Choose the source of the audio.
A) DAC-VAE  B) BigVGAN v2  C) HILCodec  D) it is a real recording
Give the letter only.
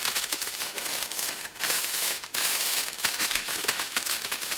A